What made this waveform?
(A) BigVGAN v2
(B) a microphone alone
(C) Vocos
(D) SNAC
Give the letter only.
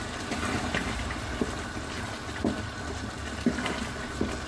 B